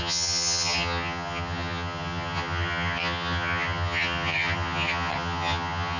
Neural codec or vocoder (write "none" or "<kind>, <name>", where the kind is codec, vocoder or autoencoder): vocoder, HiFi-GAN